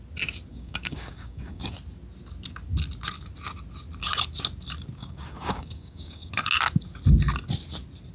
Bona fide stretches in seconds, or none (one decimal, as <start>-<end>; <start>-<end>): 0.0-0.5; 1.7-5.0; 6.3-8.1